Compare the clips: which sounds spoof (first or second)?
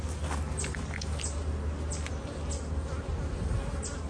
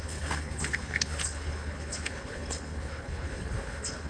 second